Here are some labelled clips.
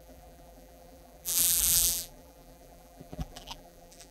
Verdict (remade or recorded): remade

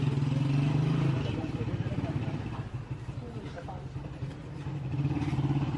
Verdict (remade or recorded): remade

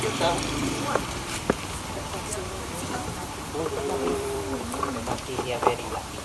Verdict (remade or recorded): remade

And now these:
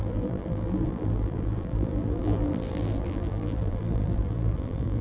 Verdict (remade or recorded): remade